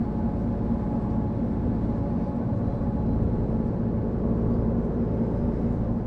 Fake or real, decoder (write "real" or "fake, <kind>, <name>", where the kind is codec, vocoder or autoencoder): real